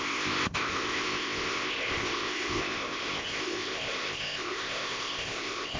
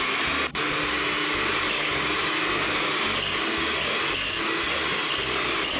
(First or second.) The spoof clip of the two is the first